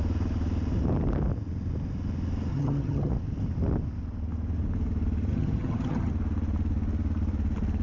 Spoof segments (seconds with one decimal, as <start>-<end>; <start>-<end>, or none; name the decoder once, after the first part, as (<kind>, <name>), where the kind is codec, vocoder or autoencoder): 2.5-3.1 (vocoder, HiFi-GAN); 5.3-6.1